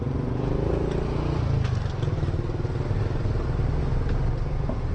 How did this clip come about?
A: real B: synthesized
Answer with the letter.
A